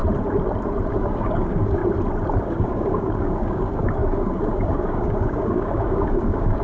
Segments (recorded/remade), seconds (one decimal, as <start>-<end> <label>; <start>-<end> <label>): 0.0-0.9 recorded; 0.9-1.8 remade; 1.8-2.4 recorded; 2.4-6.6 remade